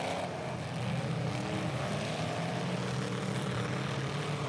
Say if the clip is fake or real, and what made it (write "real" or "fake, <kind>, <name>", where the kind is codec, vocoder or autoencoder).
real